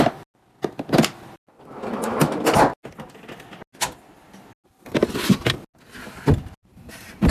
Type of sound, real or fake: real